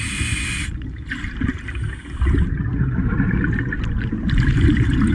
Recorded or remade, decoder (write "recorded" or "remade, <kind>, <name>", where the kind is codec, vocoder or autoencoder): recorded